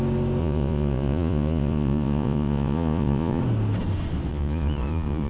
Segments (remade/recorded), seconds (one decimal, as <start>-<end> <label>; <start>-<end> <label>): 0.0-0.4 recorded; 0.4-3.4 remade; 3.4-4.3 recorded; 4.3-5.3 remade